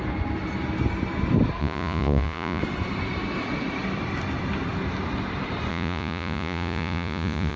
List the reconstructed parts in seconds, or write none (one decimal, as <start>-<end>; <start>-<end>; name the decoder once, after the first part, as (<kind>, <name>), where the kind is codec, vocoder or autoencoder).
1.6-2.6 (vocoder, Vocos); 5.7-7.6